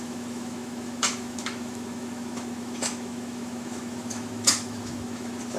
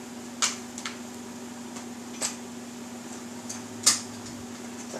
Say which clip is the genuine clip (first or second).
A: second